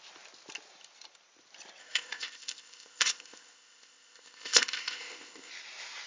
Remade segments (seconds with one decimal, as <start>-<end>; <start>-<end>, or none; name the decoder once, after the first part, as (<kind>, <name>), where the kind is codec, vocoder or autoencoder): 1.8-5.5 (codec, ZipCodec)